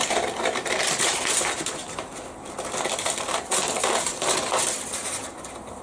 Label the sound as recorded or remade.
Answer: remade